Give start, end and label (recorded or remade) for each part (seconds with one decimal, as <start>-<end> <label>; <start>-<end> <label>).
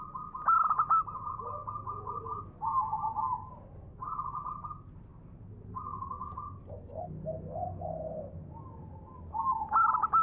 0.0-10.2 recorded